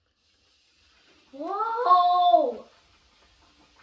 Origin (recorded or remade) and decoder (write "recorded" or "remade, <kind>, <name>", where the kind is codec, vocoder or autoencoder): recorded